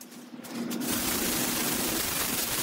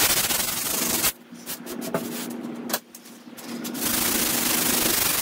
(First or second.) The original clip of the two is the second